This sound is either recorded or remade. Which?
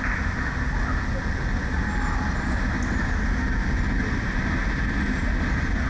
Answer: recorded